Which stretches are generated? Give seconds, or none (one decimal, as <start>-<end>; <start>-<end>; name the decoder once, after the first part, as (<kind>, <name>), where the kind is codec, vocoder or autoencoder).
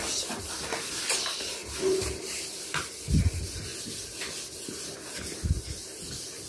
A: 0.0-3.7 (vocoder, BigVGAN v2); 4.8-6.5